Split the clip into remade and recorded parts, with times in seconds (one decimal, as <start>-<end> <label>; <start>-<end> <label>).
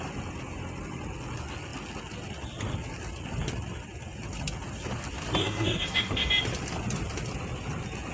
0.0-5.4 recorded; 5.4-6.3 remade; 6.3-8.1 recorded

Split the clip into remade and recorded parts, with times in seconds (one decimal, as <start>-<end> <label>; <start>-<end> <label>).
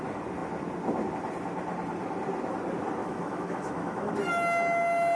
0.0-3.0 recorded; 3.0-4.1 remade; 4.1-5.2 recorded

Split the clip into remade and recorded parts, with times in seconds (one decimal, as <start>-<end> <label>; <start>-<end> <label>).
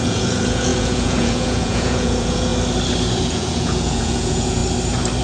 0.0-2.5 remade; 2.5-3.1 recorded; 3.1-4.6 remade; 4.6-5.2 recorded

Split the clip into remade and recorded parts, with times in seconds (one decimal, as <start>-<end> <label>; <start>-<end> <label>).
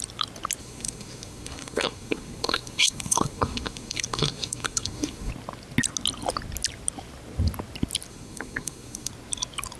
0.0-0.6 recorded; 0.6-5.3 remade; 5.3-8.1 recorded; 8.1-9.1 remade; 9.1-9.8 recorded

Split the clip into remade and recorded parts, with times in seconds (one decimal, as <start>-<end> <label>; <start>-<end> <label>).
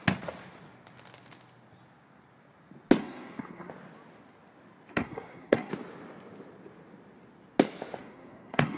0.0-3.0 recorded; 3.0-3.7 remade; 3.7-4.9 recorded; 4.9-5.7 remade; 5.7-8.0 recorded; 8.0-8.8 remade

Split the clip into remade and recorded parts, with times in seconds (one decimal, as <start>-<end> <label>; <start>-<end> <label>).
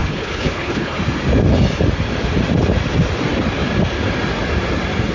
0.0-1.0 remade; 1.0-5.1 recorded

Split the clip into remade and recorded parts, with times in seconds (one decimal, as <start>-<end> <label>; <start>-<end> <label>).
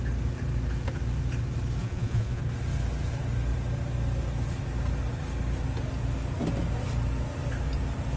0.0-1.8 recorded; 1.8-2.4 remade; 2.4-8.2 recorded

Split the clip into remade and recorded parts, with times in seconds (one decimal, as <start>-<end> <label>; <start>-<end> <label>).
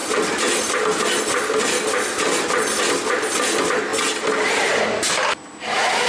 0.0-2.8 remade; 2.8-3.9 recorded; 3.9-4.8 remade; 4.8-6.1 recorded